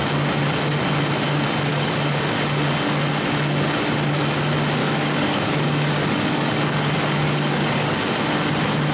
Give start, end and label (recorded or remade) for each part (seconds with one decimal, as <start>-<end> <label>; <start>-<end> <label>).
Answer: 0.0-1.7 recorded; 1.7-2.2 remade; 2.2-4.8 recorded; 4.8-8.0 remade; 8.0-8.9 recorded